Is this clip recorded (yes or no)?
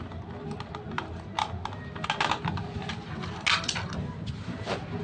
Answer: yes